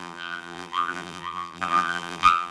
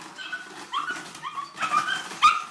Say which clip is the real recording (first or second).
second